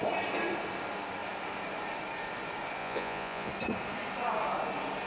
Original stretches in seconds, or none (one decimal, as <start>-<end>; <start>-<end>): 0.0-2.8; 3.5-5.1